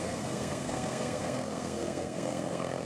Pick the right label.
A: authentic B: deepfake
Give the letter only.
B